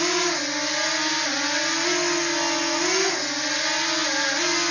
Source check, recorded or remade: recorded